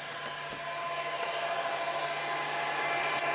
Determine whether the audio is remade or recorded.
recorded